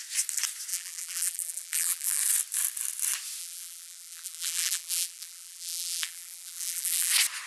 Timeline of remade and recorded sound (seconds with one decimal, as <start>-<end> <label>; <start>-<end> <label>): 0.0-0.7 recorded; 0.7-2.2 remade; 2.2-3.4 recorded; 3.4-7.1 remade; 7.1-7.5 recorded